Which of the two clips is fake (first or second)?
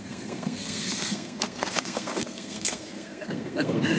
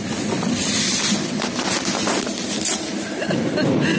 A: first